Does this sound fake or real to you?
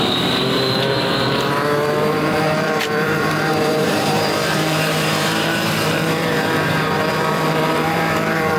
fake